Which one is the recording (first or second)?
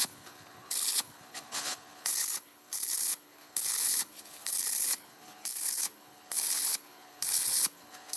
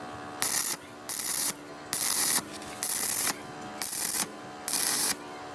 second